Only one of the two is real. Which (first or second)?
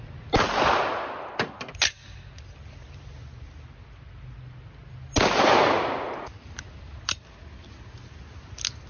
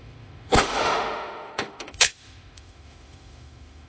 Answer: first